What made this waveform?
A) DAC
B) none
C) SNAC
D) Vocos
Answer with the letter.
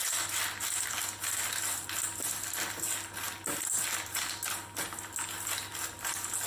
B